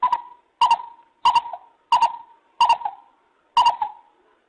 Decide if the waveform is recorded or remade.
recorded